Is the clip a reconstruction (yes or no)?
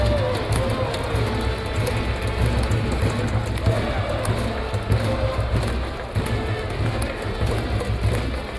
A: no